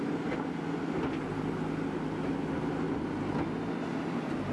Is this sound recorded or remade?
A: recorded